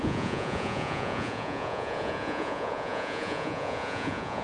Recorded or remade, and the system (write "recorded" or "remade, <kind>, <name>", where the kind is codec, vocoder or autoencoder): remade, vocoder, Vocos